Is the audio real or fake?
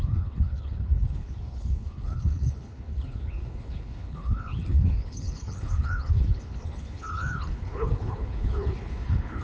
fake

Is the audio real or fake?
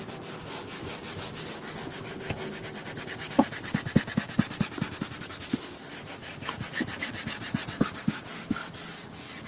real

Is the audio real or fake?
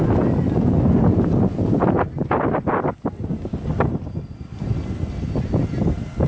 real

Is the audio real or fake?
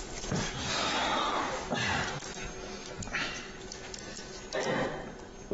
real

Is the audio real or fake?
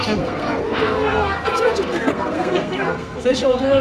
fake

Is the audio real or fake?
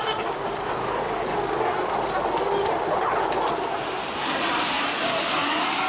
real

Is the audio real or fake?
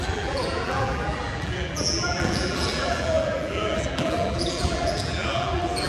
fake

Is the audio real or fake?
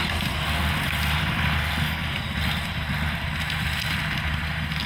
real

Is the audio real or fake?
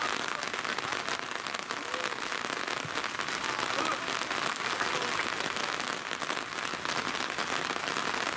real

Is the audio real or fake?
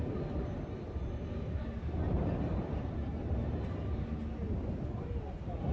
real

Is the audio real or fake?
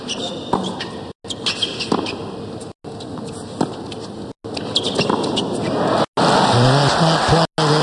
real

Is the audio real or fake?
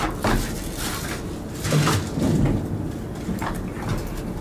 real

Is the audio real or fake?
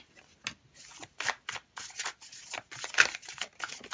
real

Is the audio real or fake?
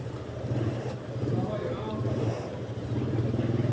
real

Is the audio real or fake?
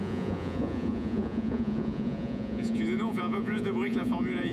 fake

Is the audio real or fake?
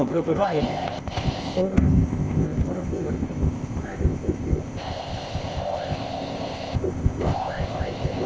fake